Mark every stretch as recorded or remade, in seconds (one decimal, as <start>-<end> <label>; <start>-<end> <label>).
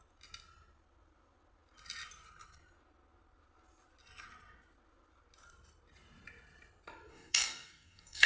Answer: 0.0-7.1 recorded; 7.1-8.3 remade